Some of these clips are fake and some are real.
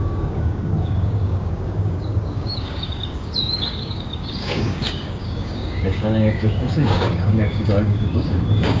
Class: fake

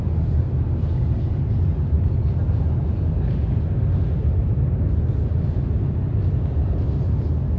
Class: real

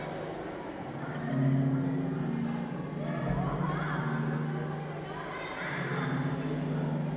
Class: real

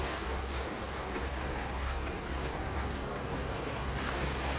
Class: fake